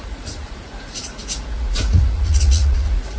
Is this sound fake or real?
fake